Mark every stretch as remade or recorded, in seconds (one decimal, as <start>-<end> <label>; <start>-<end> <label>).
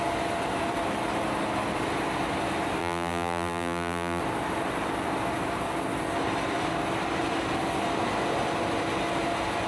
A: 0.0-2.8 recorded; 2.8-4.2 remade; 4.2-9.7 recorded